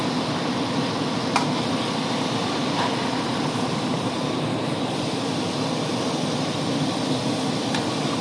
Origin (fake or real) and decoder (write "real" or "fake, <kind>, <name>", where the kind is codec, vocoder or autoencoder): real